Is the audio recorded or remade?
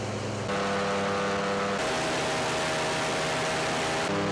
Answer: recorded